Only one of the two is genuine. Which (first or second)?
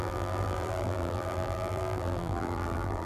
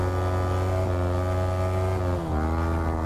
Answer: second